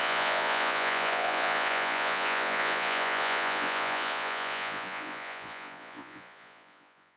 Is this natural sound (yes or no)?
no